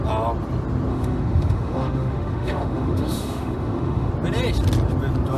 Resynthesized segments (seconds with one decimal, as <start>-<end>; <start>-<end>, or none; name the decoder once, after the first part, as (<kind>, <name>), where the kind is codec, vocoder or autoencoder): 0.9-4.1 (autoencoder, DAC-VAE)